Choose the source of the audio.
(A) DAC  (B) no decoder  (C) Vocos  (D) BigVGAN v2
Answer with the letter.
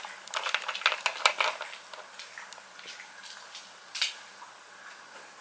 B